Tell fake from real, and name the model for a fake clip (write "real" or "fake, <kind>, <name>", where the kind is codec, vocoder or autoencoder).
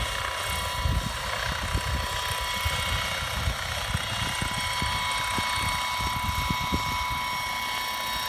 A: real